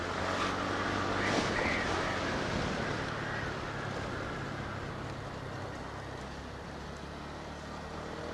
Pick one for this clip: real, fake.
real